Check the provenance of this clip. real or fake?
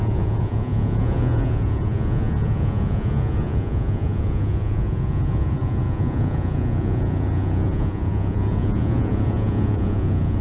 fake